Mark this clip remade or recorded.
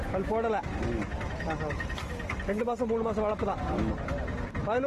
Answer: recorded